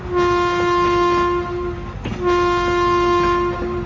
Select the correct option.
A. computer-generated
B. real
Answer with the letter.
B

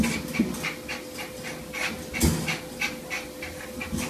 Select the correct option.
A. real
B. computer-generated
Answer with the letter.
A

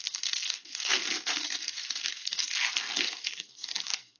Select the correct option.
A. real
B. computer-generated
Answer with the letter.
B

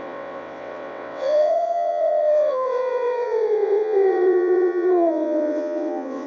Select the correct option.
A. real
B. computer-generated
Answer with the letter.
B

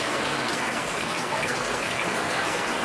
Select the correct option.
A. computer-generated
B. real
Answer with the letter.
A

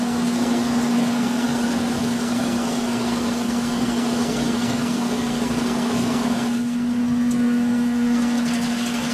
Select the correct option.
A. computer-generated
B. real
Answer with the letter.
A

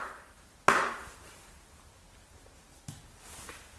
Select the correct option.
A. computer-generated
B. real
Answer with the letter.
B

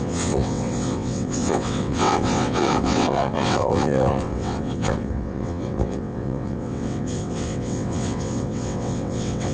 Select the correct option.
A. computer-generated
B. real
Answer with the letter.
A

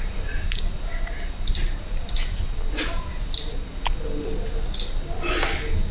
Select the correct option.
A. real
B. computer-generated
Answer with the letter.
A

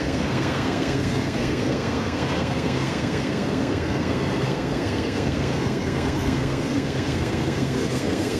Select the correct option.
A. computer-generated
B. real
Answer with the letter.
A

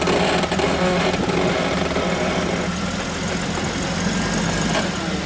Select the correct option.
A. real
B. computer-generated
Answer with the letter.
A